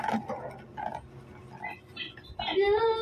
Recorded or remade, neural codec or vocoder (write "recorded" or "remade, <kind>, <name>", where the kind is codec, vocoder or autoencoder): recorded